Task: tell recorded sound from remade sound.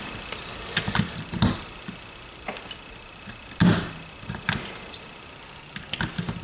recorded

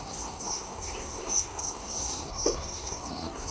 remade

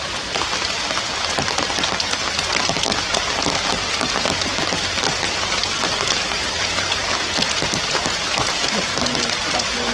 recorded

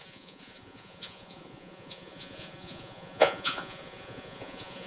remade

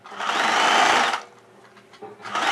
recorded